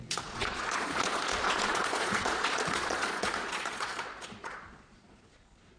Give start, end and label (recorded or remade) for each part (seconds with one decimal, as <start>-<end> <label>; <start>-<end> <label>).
0.0-5.8 remade